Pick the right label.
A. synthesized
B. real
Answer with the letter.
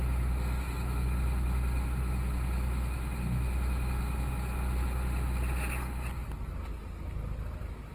B